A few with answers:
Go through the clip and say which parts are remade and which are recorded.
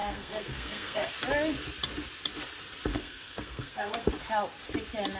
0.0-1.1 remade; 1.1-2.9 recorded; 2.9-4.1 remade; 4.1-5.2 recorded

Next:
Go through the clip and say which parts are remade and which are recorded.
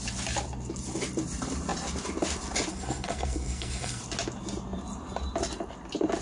0.0-2.7 recorded; 2.7-4.0 remade; 4.0-6.2 recorded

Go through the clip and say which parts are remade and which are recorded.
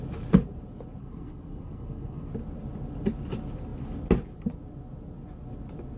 0.0-1.0 recorded; 1.0-2.3 remade; 2.3-6.0 recorded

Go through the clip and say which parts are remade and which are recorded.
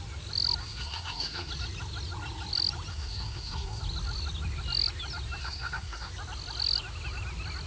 0.0-0.6 recorded; 0.6-1.5 remade; 1.5-2.9 recorded; 2.9-3.8 remade; 3.8-5.4 recorded; 5.4-6.1 remade; 6.1-7.7 recorded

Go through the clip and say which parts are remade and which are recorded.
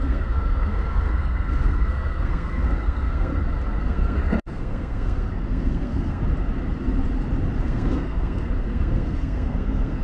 0.0-3.3 remade; 3.3-3.8 recorded; 3.8-6.2 remade; 6.2-7.6 recorded; 7.6-10.0 remade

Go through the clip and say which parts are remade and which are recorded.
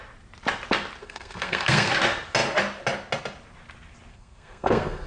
0.0-1.0 recorded; 1.0-1.9 remade; 1.9-4.1 recorded; 4.1-5.1 remade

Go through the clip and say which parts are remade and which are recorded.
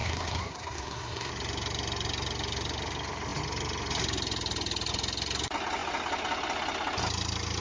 0.0-1.3 remade; 1.3-7.6 recorded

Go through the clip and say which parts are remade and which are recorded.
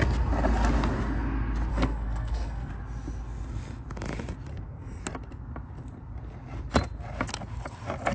0.0-1.7 recorded; 1.7-2.7 remade; 2.7-4.5 recorded; 4.5-5.0 remade; 5.0-8.1 recorded